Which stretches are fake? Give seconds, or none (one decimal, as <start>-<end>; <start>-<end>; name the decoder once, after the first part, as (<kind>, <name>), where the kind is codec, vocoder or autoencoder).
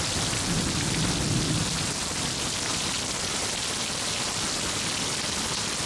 none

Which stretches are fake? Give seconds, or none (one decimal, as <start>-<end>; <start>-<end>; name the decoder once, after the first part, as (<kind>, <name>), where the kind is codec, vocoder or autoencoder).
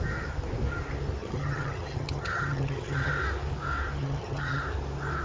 1.2-3.1 (vocoder, HiFi-GAN); 4.0-4.6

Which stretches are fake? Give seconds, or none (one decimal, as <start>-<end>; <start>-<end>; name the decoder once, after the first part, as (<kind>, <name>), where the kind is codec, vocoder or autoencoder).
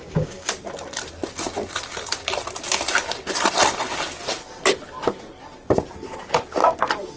0.0-0.5 (codec, DAC)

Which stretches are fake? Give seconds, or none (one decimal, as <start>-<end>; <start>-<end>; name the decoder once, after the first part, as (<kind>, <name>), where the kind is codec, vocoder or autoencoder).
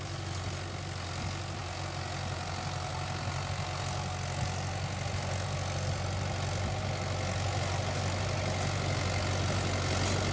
none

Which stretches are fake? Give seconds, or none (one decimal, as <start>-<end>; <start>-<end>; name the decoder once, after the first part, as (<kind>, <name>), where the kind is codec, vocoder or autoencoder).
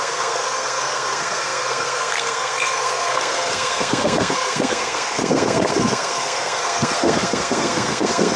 0.0-8.4 (codec, SNAC)